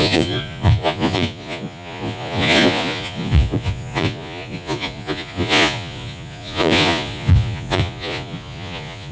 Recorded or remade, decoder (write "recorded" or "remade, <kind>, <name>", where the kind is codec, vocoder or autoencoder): remade, vocoder, Vocos